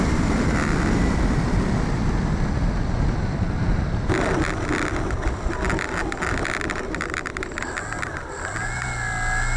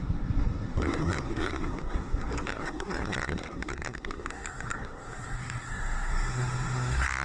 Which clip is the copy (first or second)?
second